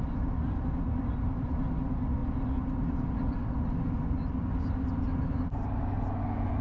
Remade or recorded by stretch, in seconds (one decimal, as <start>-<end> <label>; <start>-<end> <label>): 0.0-6.6 recorded